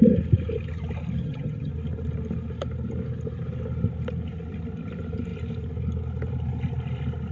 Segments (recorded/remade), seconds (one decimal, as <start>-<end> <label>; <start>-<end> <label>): 0.0-1.2 recorded; 1.2-1.7 remade; 1.7-7.3 recorded